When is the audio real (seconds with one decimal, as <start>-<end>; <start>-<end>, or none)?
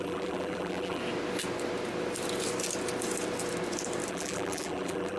1.0-4.1